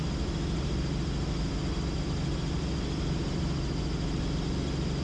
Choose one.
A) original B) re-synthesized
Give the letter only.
A